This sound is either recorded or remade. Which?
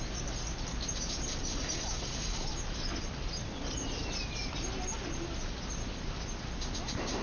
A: recorded